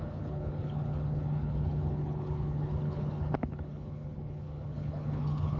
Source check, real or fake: fake